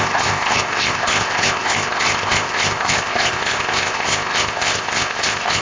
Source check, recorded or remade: remade